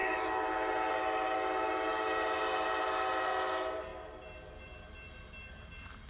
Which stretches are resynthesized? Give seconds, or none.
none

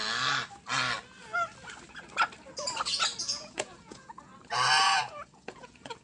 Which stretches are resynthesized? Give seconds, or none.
3.2-4.3 (vocoder, Vocos); 4.8-6.0

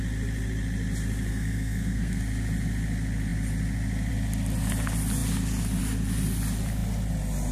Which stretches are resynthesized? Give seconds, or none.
1.3-2.2 (codec, SNAC)

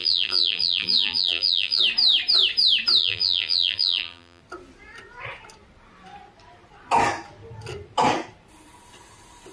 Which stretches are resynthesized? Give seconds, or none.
0.0-1.8 (vocoder, BigVGAN v2); 3.0-4.4

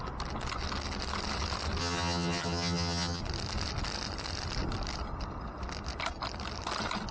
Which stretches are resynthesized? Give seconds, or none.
1.8-3.2 (vocoder, HiFi-GAN)

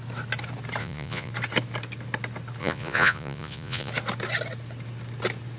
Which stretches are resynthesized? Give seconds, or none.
0.8-1.3 (vocoder, Vocos); 2.6-3.9